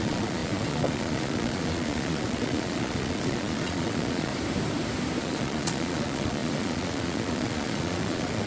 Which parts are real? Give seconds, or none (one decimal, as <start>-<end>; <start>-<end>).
4.3-5.2